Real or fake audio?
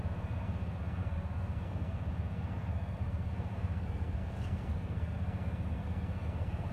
fake